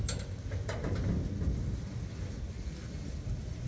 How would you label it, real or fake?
real